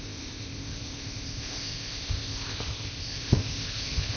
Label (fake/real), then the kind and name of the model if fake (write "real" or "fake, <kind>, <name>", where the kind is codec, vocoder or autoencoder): fake, codec, ZipCodec